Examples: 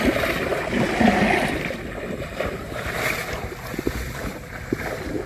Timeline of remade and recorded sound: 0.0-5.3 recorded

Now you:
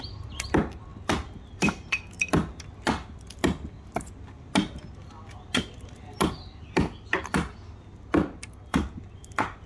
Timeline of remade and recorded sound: 0.0-0.9 recorded; 0.9-2.1 remade; 2.1-9.7 recorded

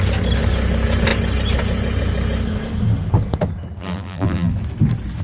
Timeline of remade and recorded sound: 0.0-3.8 recorded; 3.8-4.5 remade; 4.5-5.2 recorded

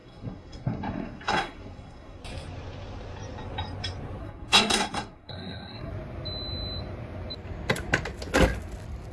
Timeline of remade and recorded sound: 0.0-2.2 remade; 2.2-4.2 recorded; 4.2-5.9 remade; 5.9-9.1 recorded

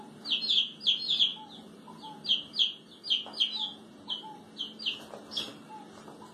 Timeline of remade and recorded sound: 0.0-6.3 recorded

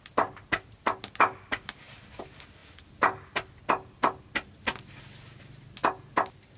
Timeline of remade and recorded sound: 0.0-6.6 recorded

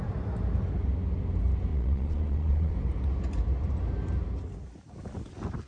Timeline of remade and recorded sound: 0.0-1.7 recorded; 1.7-2.7 remade; 2.7-5.7 recorded